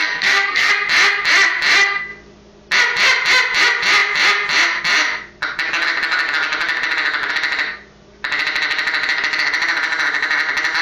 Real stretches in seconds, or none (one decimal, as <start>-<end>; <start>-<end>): 0.7-10.8